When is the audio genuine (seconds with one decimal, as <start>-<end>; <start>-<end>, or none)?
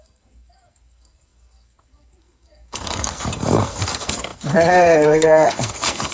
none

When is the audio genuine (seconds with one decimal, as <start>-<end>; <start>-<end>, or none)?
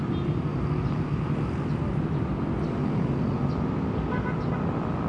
0.0-5.1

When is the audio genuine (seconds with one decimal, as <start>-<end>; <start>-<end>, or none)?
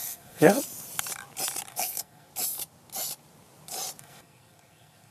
0.6-1.7; 2.3-4.0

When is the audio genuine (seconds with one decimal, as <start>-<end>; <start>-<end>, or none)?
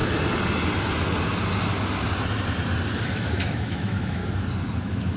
0.0-3.1; 4.2-4.8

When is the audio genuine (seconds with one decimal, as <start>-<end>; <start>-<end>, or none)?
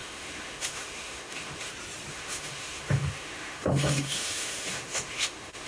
1.7-2.1